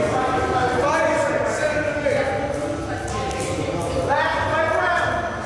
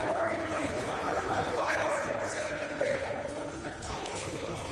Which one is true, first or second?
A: first